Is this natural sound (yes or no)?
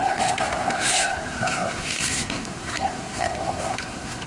no